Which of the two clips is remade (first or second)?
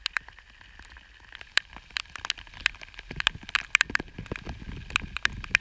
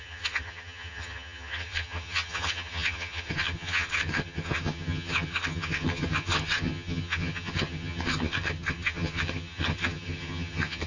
second